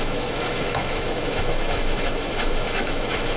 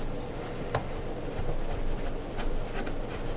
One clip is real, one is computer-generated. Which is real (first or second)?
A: second